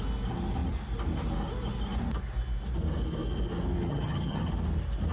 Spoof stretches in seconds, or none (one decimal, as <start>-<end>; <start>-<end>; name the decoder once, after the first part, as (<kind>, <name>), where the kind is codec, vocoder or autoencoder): 3.8-4.5 (vocoder, HiFi-GAN)